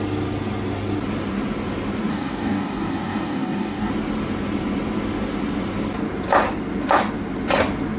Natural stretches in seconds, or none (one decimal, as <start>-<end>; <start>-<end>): 0.0-2.1; 3.9-8.0